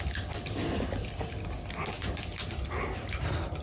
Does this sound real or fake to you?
real